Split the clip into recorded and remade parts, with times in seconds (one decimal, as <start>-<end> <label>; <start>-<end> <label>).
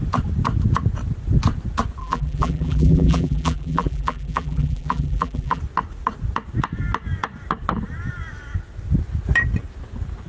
0.0-2.0 recorded; 2.0-5.6 remade; 5.6-10.3 recorded